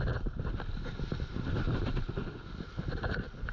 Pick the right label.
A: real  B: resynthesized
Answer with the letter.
A